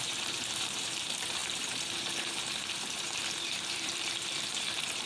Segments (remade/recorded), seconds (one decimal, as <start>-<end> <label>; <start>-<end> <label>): 0.0-5.1 remade